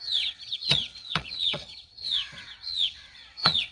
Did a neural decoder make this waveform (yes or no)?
yes